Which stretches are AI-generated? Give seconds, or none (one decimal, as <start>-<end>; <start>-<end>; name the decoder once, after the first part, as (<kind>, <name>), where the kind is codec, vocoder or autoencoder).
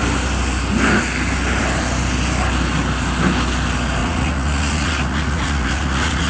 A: 4.0-6.3 (vocoder, Vocos)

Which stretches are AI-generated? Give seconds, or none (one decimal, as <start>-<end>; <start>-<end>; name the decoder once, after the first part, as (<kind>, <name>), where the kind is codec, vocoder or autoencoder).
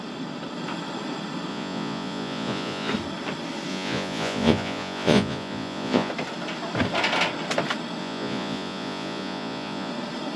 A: 1.5-2.9 (vocoder, Vocos); 3.7-6.1; 8.0-9.9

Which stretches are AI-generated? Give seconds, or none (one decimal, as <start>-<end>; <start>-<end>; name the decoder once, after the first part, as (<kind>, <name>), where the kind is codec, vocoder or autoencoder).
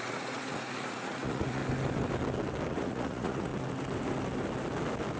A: 0.0-1.6 (vocoder, Vocos); 2.7-3.5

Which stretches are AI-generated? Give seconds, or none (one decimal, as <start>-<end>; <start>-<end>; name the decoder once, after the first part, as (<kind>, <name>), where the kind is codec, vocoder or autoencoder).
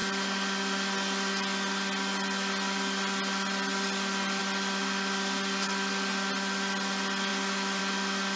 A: none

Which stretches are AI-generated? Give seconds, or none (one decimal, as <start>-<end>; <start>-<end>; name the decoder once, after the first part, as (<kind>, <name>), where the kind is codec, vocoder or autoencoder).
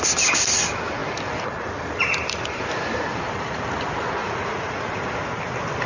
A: 4.2-5.1 (vocoder, Vocos)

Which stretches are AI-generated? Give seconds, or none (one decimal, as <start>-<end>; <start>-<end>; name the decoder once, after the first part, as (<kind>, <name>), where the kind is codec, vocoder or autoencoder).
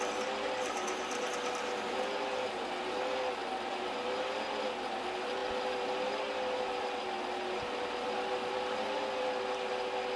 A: none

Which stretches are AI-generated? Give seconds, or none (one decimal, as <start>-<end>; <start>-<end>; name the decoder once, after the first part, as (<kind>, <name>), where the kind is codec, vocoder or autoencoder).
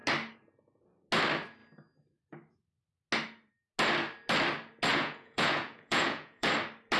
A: 4.9-6.5 (vocoder, Vocos)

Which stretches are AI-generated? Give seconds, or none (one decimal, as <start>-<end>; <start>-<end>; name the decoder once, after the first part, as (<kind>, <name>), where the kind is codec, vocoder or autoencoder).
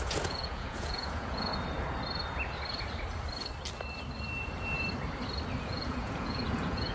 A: 0.0-1.5 (vocoder, Vocos); 5.6-6.9